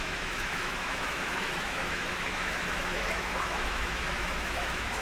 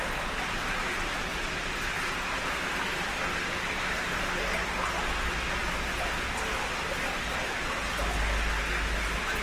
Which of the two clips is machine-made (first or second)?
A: first